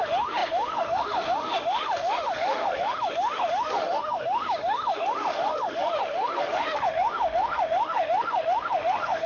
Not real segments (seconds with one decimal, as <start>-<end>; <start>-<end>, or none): 0.0-9.3